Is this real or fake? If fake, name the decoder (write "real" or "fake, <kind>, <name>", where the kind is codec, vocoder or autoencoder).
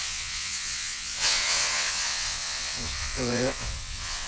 fake, vocoder, WaveNeXt